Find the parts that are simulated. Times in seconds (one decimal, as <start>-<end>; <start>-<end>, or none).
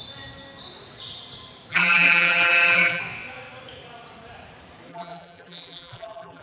1.7-3.0; 4.9-6.4